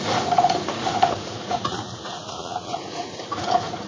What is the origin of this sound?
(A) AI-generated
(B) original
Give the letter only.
A